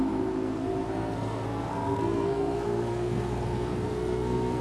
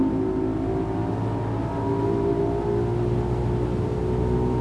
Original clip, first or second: second